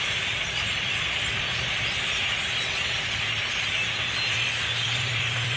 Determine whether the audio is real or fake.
fake